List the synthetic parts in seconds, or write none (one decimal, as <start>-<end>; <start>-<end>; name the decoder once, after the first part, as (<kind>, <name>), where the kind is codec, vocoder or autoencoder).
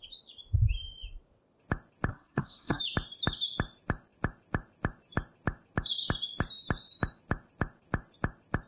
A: 2.1-2.8 (codec, SNAC)